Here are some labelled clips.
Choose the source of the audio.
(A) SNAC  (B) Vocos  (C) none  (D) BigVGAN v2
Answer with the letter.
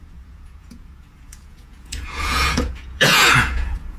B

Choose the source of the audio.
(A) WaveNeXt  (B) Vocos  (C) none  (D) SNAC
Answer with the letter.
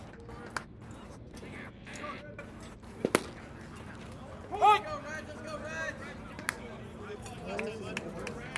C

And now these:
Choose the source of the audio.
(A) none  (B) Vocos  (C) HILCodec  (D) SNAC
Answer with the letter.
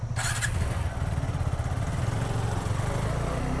A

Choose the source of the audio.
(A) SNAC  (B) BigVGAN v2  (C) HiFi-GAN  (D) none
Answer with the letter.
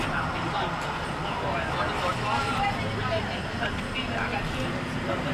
D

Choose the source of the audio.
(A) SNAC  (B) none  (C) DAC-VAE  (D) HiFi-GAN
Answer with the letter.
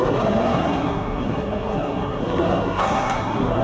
A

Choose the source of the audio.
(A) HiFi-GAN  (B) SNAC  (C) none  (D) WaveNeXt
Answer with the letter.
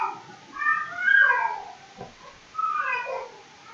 C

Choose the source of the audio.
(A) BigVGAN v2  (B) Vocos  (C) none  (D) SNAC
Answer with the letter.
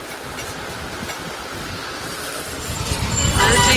C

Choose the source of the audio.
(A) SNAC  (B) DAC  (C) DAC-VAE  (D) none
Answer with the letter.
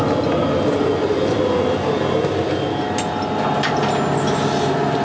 D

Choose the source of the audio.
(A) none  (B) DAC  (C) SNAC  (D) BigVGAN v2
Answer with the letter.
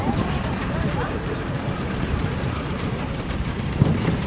D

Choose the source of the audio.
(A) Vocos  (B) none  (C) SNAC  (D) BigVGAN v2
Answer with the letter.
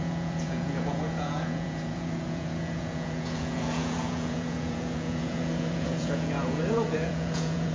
A